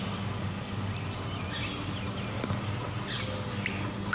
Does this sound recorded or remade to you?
recorded